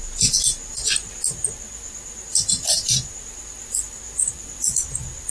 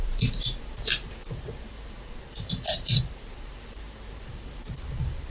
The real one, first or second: first